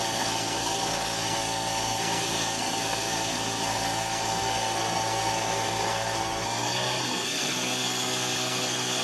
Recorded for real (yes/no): no